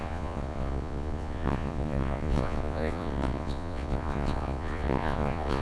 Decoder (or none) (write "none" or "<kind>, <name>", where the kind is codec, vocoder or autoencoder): vocoder, Vocos